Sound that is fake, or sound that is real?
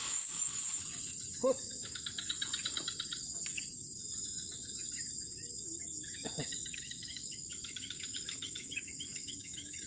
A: fake